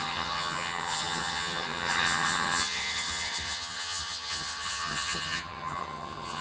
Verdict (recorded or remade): remade